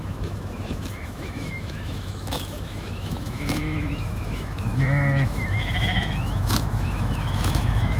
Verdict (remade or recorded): remade